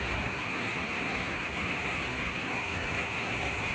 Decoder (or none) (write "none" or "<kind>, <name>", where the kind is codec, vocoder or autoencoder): codec, SNAC